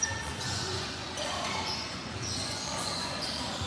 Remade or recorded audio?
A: remade